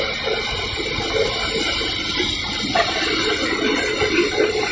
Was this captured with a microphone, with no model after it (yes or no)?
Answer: yes